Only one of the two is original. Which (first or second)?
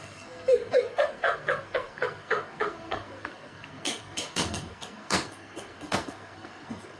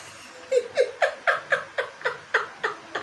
second